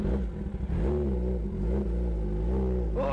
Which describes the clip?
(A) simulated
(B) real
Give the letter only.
B